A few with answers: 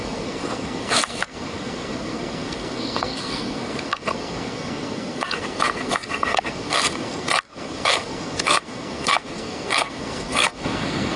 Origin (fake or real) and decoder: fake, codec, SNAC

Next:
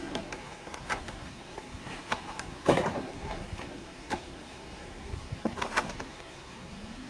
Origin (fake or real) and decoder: fake, codec, SNAC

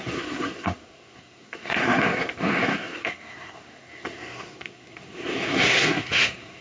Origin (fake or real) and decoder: fake, codec, SNAC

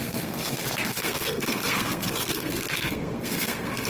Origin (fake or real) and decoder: fake, codec, SNAC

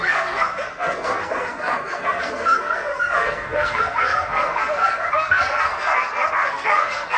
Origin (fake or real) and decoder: fake, codec, SNAC